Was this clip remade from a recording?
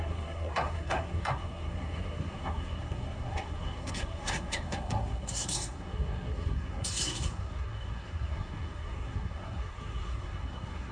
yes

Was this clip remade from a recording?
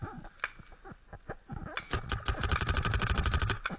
no